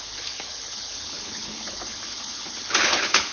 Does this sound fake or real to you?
fake